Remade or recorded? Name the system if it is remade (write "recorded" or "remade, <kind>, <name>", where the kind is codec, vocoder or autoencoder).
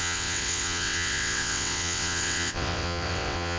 remade, vocoder, WaveNeXt